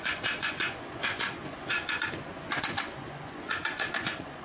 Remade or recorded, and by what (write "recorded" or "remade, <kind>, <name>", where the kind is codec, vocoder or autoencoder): remade, vocoder, Vocos